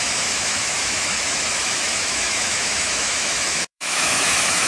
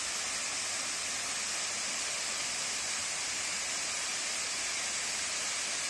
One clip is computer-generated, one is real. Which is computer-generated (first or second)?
first